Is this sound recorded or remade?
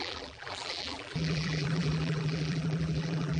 remade